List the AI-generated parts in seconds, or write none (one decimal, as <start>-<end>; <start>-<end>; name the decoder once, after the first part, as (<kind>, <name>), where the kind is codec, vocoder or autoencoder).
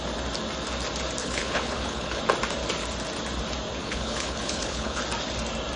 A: 1.2-2.2 (codec, HILCodec); 3.8-5.0